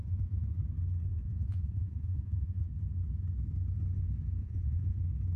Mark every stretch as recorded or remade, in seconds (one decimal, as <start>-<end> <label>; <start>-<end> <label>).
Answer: 0.0-0.6 remade; 0.6-1.1 recorded; 1.1-2.7 remade; 2.7-4.4 recorded; 4.4-5.0 remade; 5.0-5.4 recorded

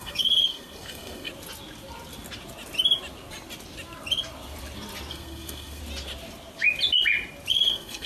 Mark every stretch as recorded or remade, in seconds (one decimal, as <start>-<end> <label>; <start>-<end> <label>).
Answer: 0.0-1.3 remade; 1.3-5.1 recorded; 5.1-5.8 remade; 5.8-7.5 recorded; 7.5-8.1 remade

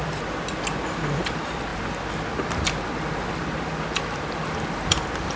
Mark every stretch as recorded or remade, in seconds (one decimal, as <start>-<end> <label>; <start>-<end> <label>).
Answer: 0.0-5.4 recorded

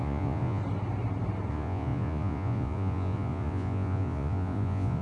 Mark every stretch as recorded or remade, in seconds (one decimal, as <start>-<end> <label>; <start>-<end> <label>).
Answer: 0.0-0.6 remade; 0.6-1.5 recorded; 1.5-5.0 remade